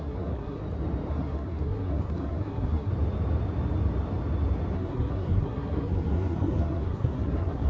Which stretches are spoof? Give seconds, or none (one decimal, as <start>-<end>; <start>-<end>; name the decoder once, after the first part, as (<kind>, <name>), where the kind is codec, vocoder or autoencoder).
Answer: 0.0-0.6 (codec, SNAC); 1.1-2.9; 4.7-7.7